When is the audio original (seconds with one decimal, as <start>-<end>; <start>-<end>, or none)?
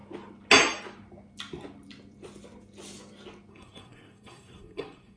0.0-3.5